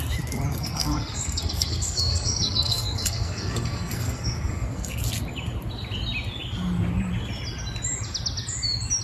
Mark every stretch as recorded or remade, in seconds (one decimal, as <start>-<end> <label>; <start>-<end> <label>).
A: 0.0-0.5 recorded; 0.5-5.0 remade; 5.0-9.0 recorded